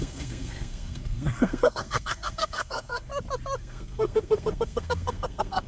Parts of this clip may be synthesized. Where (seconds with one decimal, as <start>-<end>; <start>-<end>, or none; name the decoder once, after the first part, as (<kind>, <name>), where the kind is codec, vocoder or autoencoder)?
0.0-3.1 (codec, SNAC); 3.6-5.7